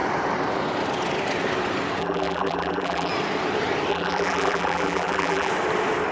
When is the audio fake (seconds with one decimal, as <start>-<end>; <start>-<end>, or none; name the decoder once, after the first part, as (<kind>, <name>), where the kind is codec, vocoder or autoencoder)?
2.0-3.1 (vocoder, BigVGAN v2); 3.9-5.5